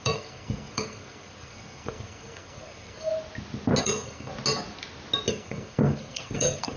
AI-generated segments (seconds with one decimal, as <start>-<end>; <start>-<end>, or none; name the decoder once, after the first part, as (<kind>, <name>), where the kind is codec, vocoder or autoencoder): 0.0-3.1 (codec, SNAC); 3.8-4.3; 5.3-6.8